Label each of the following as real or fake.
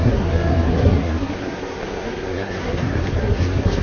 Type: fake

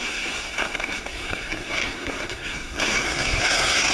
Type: fake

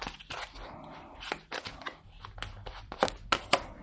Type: real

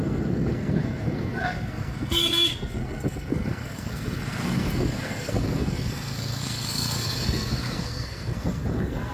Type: fake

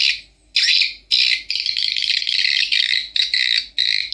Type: real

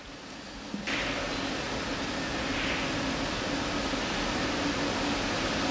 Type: real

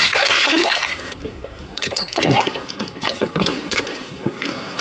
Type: fake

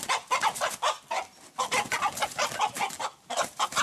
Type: real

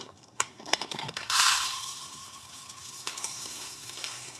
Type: fake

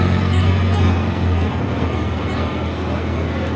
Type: fake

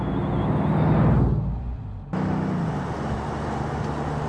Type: real